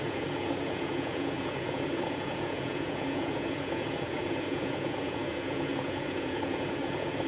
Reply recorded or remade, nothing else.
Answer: remade